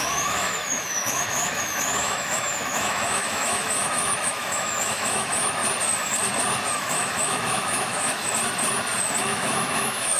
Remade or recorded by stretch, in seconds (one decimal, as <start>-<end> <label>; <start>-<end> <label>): 0.0-5.6 remade; 5.6-6.8 recorded; 6.8-8.2 remade; 8.2-9.2 recorded; 9.2-10.2 remade